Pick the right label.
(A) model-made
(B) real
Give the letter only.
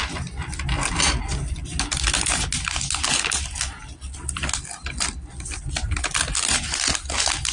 B